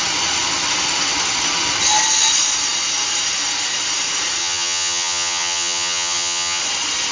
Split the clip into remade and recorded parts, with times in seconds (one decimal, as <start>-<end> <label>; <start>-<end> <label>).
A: 0.0-4.4 recorded; 4.4-6.6 remade; 6.6-7.1 recorded